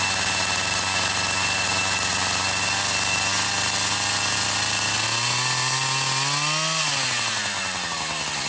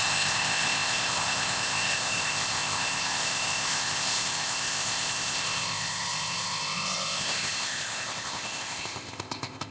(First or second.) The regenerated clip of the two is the second